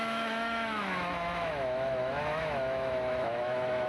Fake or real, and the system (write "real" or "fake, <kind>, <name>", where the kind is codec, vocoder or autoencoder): fake, autoencoder, DAC-VAE